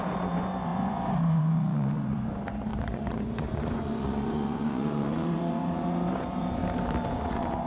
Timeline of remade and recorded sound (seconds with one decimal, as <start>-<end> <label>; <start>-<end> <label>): 0.0-6.6 remade; 6.6-7.1 recorded; 7.1-7.7 remade